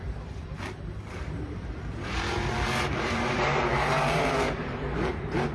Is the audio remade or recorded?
remade